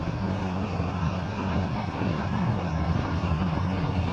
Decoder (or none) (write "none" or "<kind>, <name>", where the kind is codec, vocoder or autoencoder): codec, SNAC